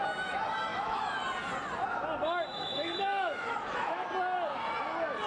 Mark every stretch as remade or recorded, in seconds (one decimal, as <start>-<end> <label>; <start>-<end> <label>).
0.0-0.7 recorded; 0.7-1.2 remade; 1.2-2.5 recorded; 2.5-4.1 remade; 4.1-5.3 recorded